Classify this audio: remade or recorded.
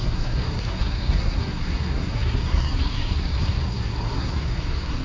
remade